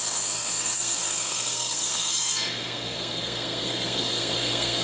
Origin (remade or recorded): remade